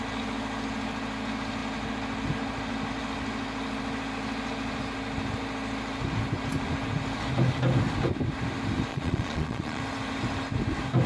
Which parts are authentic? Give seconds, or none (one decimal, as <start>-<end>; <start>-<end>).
0.0-8.9; 9.8-11.1